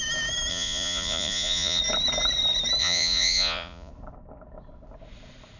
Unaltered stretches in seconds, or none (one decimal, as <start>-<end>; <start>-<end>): 0.0-0.5; 1.8-2.8; 3.9-5.6